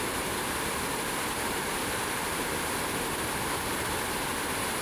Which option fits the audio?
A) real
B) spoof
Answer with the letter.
B